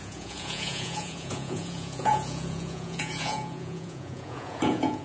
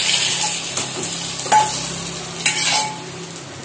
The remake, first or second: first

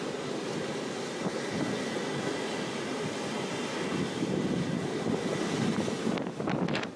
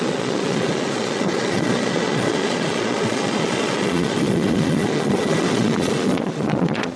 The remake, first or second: second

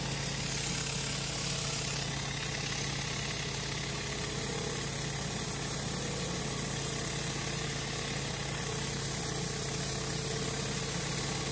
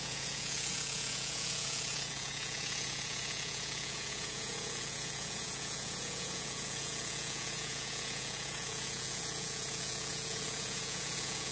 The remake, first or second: second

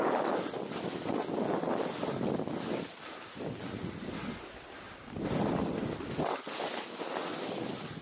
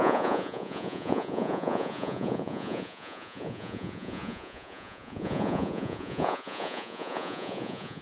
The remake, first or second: second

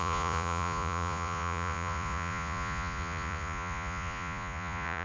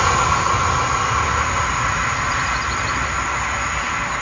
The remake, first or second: first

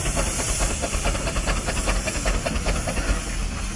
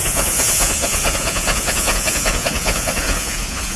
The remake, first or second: second